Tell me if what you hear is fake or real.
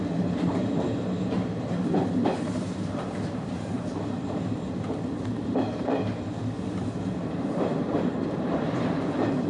fake